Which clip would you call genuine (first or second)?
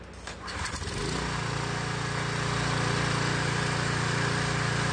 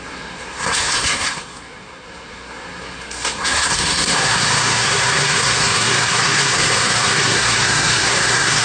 first